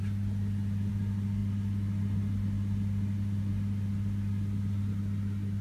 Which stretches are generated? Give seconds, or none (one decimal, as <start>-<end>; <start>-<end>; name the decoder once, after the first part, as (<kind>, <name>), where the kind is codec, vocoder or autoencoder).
none